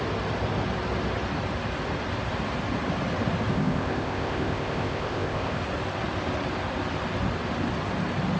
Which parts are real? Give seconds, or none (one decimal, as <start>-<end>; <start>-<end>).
0.0-3.5; 5.6-8.4